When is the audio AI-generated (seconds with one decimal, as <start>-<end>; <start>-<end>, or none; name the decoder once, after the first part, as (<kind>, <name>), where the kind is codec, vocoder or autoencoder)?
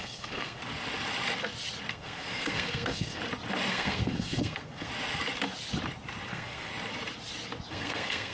0.0-0.6 (codec, SNAC); 1.9-3.2; 3.7-4.9; 6.3-6.7; 7.7-8.3